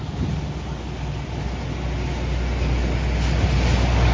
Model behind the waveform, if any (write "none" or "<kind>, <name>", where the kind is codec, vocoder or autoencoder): none